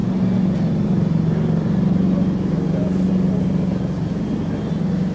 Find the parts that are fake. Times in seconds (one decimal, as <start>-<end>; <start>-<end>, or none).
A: none